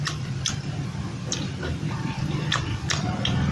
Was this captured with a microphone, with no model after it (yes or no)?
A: yes